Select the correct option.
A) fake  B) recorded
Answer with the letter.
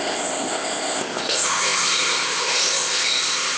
A